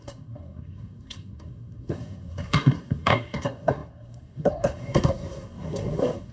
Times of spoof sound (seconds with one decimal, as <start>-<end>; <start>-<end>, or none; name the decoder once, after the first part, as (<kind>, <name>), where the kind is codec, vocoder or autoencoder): 0.0-6.3 (codec, SNAC)